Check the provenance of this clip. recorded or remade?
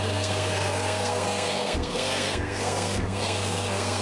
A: remade